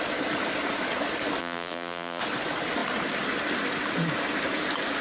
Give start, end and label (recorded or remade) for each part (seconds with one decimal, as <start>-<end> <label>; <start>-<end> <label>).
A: 0.0-1.4 recorded; 1.4-2.2 remade; 2.2-5.0 recorded